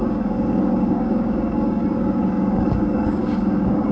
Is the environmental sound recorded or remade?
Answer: remade